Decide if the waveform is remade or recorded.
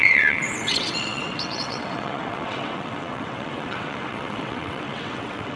remade